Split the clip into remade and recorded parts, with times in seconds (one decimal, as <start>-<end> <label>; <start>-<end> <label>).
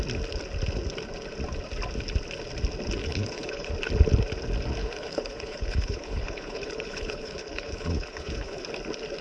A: 0.0-3.0 recorded; 3.0-3.7 remade; 3.7-4.8 recorded; 4.8-8.6 remade; 8.6-9.2 recorded